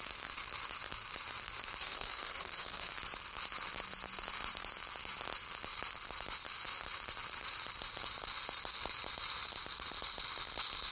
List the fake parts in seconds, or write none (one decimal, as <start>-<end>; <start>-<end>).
1.8-2.9